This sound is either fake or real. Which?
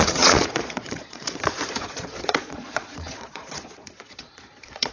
fake